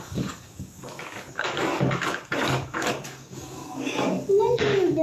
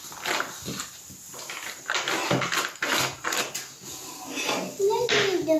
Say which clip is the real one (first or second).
second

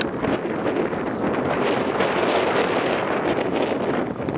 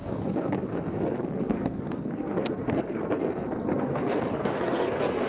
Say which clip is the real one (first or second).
first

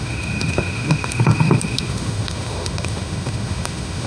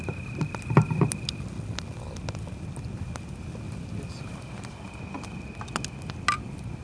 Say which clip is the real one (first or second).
second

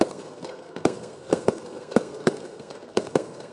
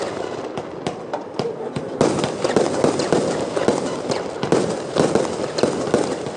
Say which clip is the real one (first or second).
second